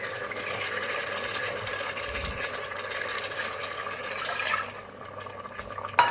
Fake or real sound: real